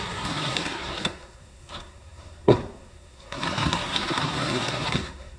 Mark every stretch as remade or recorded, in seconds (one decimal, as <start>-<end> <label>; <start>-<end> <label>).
0.0-5.4 remade